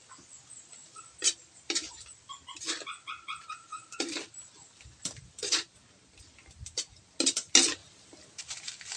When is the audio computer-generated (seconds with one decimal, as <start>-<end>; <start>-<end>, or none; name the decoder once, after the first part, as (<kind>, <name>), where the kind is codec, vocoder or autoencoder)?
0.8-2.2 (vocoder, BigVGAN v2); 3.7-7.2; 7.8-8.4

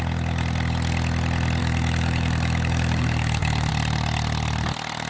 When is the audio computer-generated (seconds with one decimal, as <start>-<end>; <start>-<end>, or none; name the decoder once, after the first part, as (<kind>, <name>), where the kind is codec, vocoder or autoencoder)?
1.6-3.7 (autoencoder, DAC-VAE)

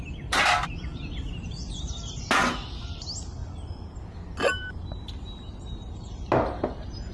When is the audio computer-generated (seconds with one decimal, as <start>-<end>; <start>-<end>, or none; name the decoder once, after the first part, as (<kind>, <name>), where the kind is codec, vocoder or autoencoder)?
none

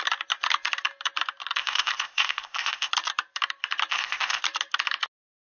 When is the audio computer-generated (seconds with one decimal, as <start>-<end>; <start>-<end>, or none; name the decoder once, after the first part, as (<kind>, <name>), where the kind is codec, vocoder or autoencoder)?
1.6-2.9 (codec, ZipCodec); 3.9-4.4

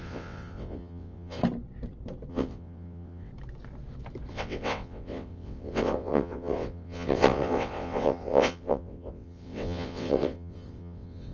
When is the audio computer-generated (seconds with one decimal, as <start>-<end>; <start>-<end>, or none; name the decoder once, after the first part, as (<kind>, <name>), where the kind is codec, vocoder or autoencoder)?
0.0-1.4 (vocoder, WaveNeXt); 2.3-3.3; 4.3-11.3

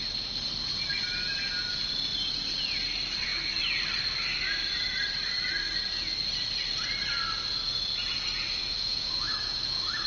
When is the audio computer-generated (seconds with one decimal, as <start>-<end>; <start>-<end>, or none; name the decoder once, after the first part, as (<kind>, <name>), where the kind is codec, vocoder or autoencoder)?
8.6-10.1 (autoencoder, DAC-VAE)

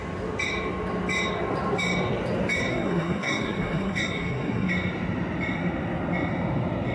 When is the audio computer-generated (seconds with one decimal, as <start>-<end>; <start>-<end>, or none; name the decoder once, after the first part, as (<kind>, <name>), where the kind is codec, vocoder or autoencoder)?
2.7-4.7 (codec, SNAC)